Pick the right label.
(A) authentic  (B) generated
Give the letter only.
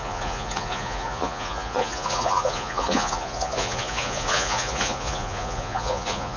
B